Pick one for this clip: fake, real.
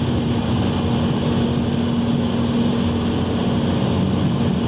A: real